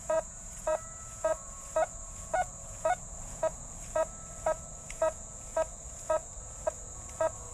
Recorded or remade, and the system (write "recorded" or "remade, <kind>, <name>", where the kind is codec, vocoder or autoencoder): remade, vocoder, Vocos